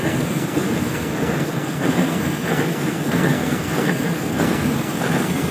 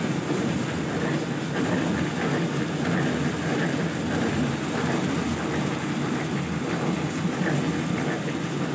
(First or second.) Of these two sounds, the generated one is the first